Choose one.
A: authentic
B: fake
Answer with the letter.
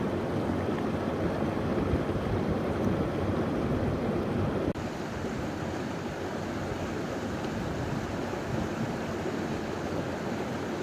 A